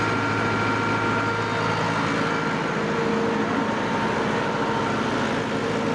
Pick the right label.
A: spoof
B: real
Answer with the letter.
B